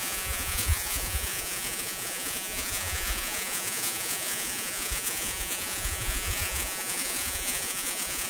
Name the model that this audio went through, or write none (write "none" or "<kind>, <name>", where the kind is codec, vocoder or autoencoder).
vocoder, Vocos